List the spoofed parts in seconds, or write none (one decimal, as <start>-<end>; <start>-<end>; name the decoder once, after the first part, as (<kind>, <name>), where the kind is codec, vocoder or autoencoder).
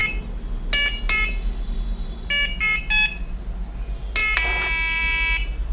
none